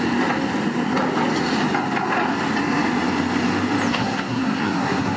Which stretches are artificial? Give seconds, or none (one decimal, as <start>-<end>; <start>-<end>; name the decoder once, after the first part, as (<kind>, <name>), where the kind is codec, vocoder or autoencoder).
3.9-5.2 (codec, SNAC)